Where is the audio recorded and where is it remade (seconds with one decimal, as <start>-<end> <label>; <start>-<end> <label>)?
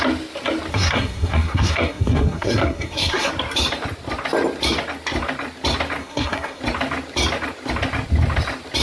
0.0-0.7 recorded; 0.7-3.3 remade; 3.3-6.0 recorded; 6.0-6.6 remade; 6.6-8.8 recorded